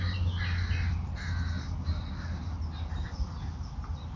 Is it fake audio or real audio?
real